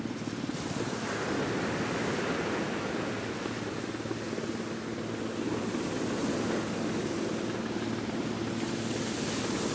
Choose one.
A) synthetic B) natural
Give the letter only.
B